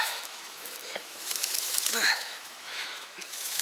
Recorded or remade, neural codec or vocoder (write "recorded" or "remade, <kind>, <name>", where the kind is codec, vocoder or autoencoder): remade, autoencoder, DAC-VAE